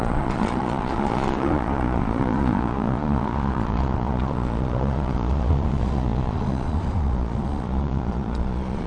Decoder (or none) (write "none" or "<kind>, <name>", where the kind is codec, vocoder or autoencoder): vocoder, Vocos